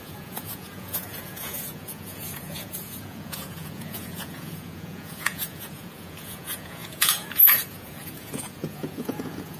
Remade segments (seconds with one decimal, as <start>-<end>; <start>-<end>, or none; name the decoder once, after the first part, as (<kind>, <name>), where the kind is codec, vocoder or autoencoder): 0.0-9.6 (vocoder, Vocos)